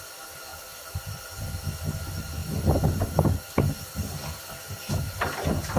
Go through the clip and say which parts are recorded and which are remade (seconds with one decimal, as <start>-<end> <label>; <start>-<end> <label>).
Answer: 0.0-0.5 recorded; 0.5-1.2 remade; 1.2-5.8 recorded